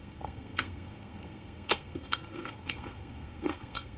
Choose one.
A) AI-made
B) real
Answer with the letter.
A